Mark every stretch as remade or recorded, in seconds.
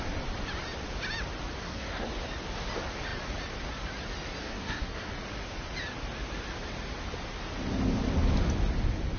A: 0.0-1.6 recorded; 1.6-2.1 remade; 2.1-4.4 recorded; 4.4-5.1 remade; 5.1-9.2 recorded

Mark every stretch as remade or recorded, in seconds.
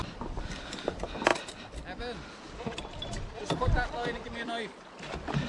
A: 0.0-5.5 recorded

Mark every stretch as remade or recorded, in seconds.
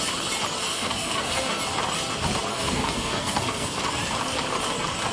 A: 0.0-0.7 recorded; 0.7-1.6 remade; 1.6-2.5 recorded; 2.5-3.8 remade; 3.8-5.1 recorded